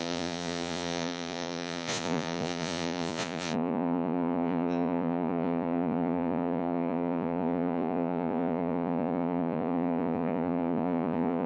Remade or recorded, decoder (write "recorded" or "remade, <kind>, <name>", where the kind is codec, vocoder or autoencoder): remade, vocoder, Vocos